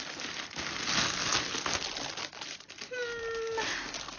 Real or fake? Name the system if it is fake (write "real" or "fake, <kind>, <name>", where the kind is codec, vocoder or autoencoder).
real